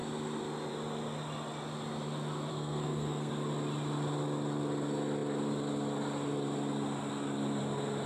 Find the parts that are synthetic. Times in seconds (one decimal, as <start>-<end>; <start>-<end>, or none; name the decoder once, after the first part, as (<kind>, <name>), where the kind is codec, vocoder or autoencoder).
2.5-3.3 (codec, SNAC)